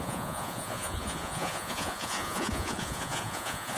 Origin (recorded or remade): remade